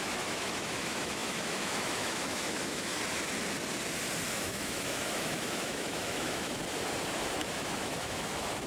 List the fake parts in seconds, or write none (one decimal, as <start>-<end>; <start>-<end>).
0.0-2.9; 4.3-6.6; 7.4-8.7